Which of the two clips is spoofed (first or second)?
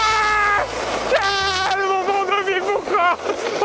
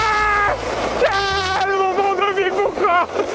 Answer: second